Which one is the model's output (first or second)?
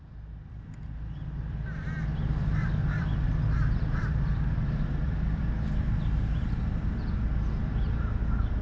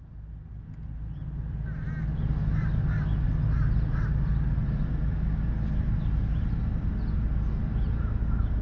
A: first